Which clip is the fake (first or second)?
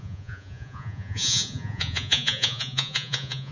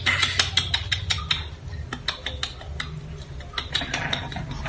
first